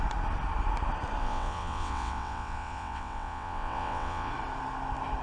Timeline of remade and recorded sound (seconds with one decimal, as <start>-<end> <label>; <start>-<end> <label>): 0.0-1.2 recorded; 1.2-4.3 remade; 4.3-5.2 recorded